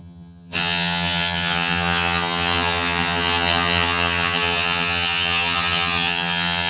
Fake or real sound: fake